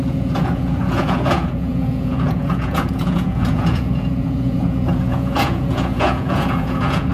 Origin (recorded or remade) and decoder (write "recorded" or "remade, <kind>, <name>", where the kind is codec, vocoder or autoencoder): remade, vocoder, Vocos